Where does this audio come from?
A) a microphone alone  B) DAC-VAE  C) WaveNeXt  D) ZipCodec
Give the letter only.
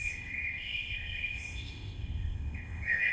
D